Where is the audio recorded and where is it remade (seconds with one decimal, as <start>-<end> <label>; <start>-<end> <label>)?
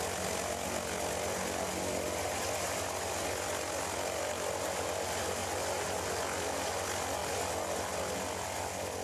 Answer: 0.0-9.0 recorded